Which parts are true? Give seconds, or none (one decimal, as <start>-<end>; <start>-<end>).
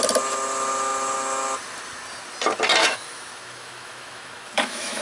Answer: 0.0-2.8